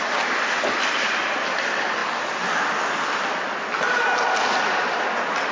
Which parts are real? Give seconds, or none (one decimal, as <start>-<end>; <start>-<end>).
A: 0.0-5.5